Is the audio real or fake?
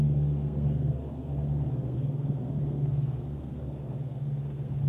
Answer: fake